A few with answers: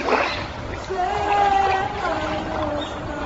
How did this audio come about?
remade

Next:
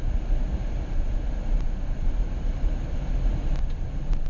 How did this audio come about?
remade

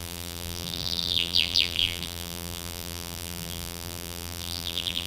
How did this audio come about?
remade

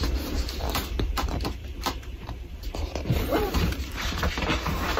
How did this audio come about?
remade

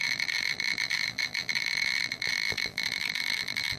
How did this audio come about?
remade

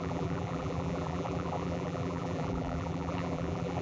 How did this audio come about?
remade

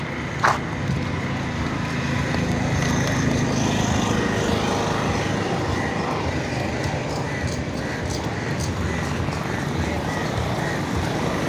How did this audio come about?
recorded